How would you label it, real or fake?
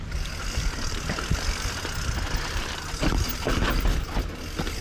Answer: real